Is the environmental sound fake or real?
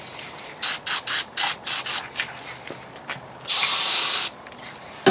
real